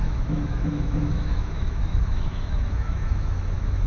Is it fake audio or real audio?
fake